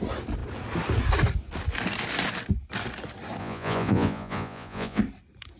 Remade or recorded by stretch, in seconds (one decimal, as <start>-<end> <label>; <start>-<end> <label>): 0.0-3.4 recorded; 3.4-5.0 remade; 5.0-5.6 recorded